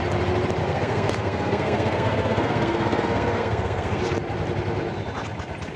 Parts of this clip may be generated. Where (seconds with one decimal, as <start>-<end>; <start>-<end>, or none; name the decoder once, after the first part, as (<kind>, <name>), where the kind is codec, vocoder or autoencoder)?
0.6-4.0 (codec, SNAC)